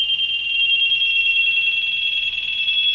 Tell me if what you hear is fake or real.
real